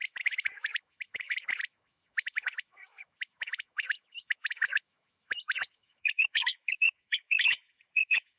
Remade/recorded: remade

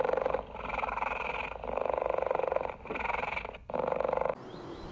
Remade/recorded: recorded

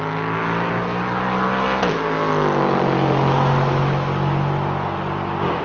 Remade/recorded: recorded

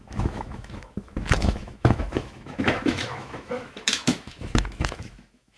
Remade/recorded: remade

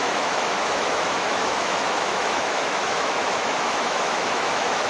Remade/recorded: remade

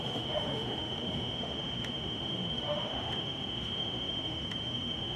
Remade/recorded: remade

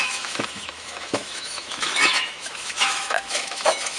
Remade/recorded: remade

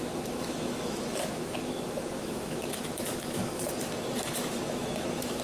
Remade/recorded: remade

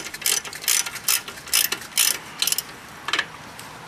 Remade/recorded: recorded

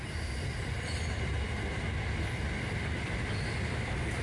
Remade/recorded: recorded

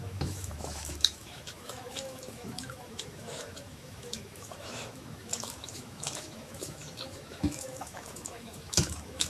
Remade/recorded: remade